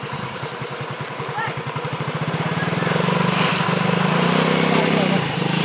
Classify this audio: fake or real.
fake